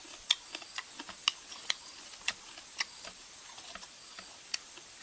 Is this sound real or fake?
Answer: real